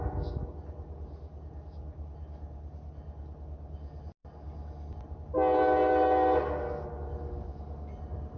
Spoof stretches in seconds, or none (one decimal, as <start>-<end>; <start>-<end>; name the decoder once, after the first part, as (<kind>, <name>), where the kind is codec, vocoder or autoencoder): none